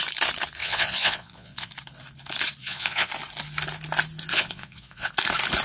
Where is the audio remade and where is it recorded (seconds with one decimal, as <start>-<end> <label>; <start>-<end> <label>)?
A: 0.0-0.6 recorded; 0.6-1.7 remade; 1.7-2.6 recorded; 2.6-3.1 remade; 3.1-4.3 recorded; 4.3-5.1 remade; 5.1-5.6 recorded